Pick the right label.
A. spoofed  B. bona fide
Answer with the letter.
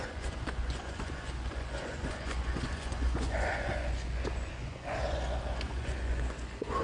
A